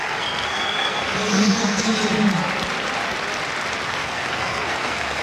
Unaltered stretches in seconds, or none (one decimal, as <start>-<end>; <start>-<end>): 1.9-3.9

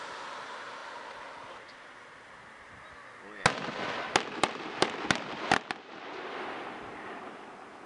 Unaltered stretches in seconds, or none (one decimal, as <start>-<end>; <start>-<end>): 0.0-7.9

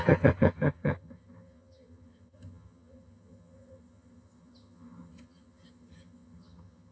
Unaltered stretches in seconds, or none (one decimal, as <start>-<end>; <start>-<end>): none